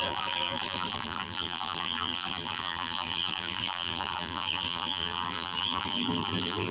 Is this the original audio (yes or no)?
no